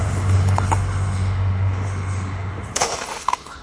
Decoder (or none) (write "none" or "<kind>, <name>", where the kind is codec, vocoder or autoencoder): autoencoder, DAC-VAE